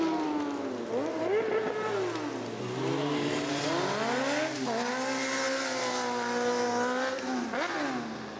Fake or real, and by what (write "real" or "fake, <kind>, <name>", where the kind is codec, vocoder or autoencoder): real